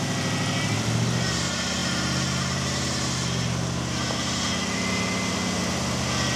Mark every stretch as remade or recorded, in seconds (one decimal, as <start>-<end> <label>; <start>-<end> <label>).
0.0-6.4 recorded